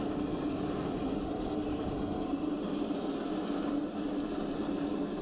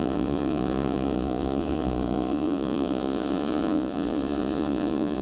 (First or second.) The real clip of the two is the first